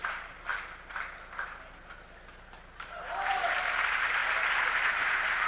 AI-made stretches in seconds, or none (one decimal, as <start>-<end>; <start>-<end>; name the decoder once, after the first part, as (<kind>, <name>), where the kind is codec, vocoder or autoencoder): 0.0-0.5 (vocoder, BigVGAN v2); 3.8-4.2; 4.9-5.5